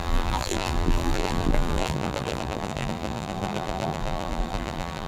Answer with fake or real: fake